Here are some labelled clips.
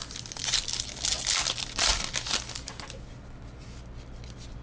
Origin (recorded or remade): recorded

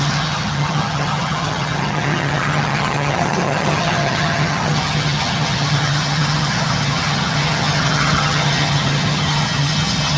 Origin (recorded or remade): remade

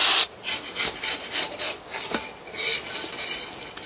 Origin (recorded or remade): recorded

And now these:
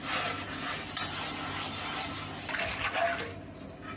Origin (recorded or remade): recorded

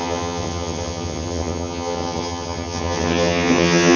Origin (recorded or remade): remade